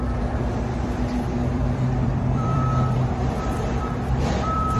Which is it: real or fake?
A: fake